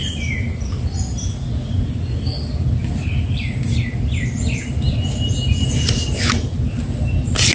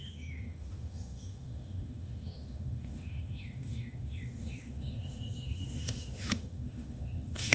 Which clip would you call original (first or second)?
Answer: first